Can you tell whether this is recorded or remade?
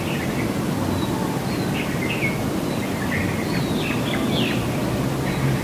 recorded